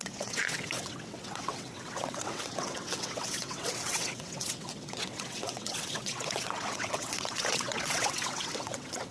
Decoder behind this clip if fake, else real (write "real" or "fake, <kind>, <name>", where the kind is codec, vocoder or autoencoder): fake, vocoder, WaveNeXt